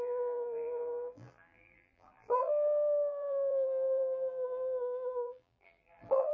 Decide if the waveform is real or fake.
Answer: fake